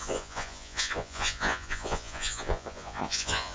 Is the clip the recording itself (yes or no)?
no